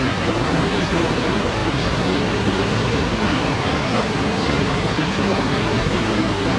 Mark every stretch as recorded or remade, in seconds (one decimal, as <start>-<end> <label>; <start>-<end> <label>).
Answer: 0.0-6.6 remade